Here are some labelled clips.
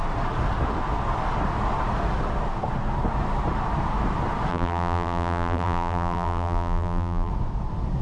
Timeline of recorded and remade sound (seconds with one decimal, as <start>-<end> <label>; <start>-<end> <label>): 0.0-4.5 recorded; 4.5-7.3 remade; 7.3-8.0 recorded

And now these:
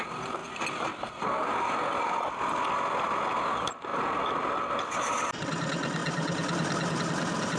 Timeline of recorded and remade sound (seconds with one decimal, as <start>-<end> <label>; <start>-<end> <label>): 0.0-0.4 recorded; 0.4-1.5 remade; 1.5-7.6 recorded

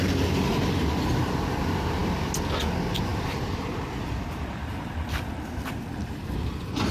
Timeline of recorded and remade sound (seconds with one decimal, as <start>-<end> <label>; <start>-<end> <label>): 0.0-3.1 recorded; 3.1-5.8 remade; 5.8-6.9 recorded

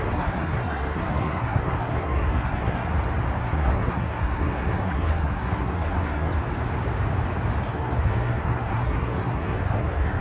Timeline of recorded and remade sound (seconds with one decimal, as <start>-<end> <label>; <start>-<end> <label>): 0.0-2.9 remade; 2.9-3.4 recorded; 3.4-6.3 remade; 6.3-7.7 recorded; 7.7-10.2 remade